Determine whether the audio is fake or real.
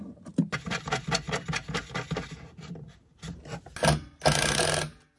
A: real